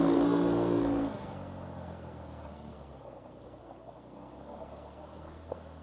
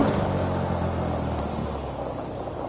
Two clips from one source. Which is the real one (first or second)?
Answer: second